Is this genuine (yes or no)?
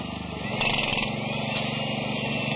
yes